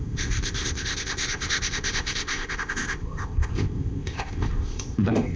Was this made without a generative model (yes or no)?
no